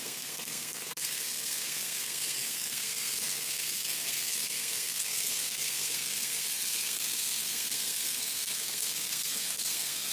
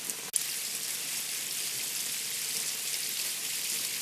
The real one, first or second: second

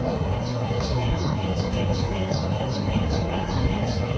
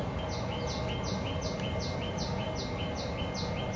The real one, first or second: second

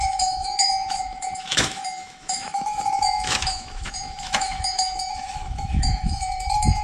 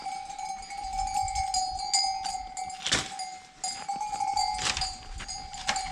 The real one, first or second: second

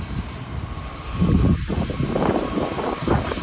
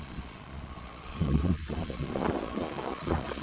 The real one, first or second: first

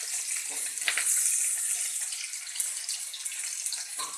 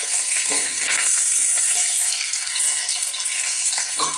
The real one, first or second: first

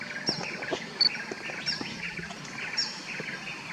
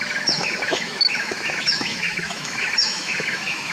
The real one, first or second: first